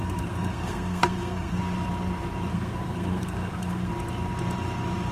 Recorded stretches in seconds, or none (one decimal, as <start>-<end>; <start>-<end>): 1.6-2.5; 3.9-5.1